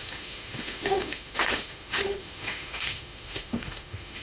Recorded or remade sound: remade